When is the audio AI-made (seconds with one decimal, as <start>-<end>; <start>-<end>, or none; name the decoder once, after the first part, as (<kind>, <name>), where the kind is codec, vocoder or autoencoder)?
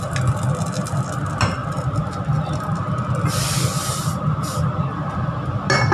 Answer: none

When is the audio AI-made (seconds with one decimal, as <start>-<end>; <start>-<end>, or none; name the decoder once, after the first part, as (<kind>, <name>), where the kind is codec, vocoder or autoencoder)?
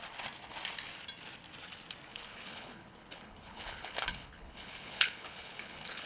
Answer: 2.1-6.1 (codec, HILCodec)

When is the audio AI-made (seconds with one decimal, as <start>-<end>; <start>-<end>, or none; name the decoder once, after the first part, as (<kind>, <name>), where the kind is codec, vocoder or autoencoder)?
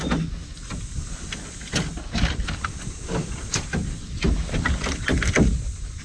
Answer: none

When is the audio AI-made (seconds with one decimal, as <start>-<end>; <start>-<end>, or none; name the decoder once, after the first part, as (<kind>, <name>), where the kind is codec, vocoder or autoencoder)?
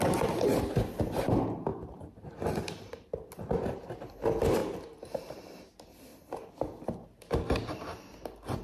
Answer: 1.7-3.3 (vocoder, BigVGAN v2); 4.6-5.6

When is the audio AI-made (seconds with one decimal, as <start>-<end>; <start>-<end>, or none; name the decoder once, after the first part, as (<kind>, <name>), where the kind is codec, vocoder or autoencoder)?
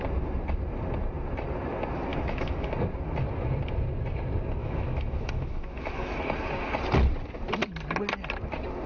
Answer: 2.1-2.7 (autoencoder, DAC-VAE); 4.6-6.1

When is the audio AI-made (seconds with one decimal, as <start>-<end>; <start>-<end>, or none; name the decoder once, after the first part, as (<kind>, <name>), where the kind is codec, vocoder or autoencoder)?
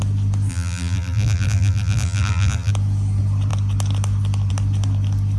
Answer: 0.5-2.7 (vocoder, BigVGAN v2)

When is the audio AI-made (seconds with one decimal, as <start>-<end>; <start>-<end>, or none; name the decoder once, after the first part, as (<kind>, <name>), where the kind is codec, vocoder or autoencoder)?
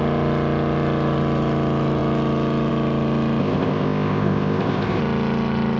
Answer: 3.4-5.0 (codec, ZipCodec)